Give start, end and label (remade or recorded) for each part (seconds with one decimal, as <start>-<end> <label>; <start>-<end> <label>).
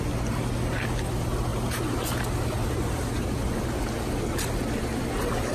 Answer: 0.0-5.5 recorded